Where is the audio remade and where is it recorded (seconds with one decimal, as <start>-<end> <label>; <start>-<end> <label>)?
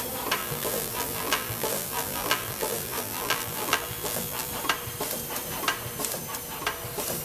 0.0-0.4 recorded; 0.4-4.5 remade; 4.5-7.2 recorded